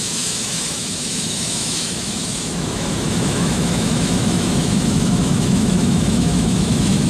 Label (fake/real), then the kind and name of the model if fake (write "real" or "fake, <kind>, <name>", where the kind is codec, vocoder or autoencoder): fake, autoencoder, DAC-VAE